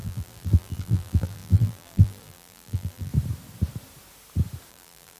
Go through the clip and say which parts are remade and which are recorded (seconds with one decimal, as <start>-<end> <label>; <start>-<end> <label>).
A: 0.0-3.1 remade; 3.1-4.7 recorded; 4.7-5.2 remade